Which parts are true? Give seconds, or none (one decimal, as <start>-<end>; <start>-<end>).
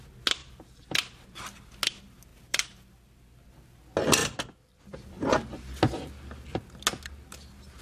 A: 0.0-0.4; 1.8-2.3; 3.6-4.2; 4.8-7.8